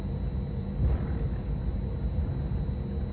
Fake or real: real